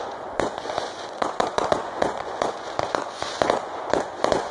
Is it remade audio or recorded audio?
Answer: remade